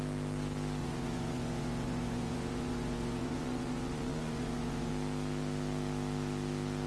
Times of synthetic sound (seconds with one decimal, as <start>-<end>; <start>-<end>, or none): 0.8-4.9